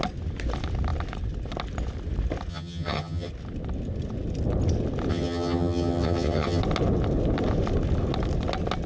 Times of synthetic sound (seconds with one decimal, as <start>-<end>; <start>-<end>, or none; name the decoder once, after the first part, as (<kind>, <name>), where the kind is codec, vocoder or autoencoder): 2.5-3.3 (vocoder, HiFi-GAN); 5.1-6.6